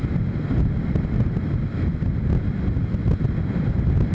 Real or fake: real